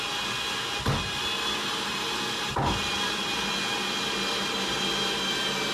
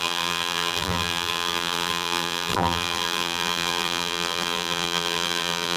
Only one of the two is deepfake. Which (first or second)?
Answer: second